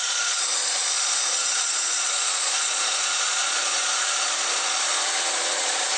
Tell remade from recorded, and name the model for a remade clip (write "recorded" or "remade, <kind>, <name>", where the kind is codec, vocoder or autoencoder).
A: remade, vocoder, Vocos